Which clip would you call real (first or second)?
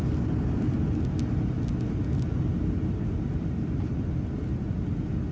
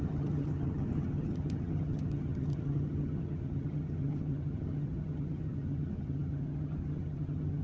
first